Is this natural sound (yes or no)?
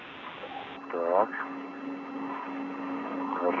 yes